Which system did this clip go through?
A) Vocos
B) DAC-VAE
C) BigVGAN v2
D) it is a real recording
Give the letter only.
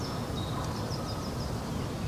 D